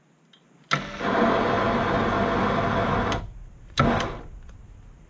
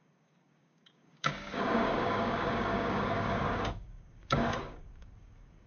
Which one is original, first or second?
first